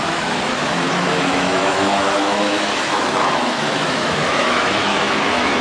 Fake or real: fake